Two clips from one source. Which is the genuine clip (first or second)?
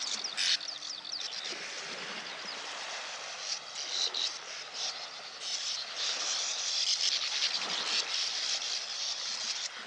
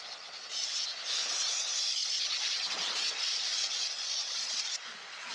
first